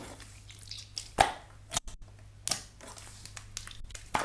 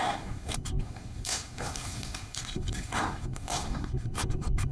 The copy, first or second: second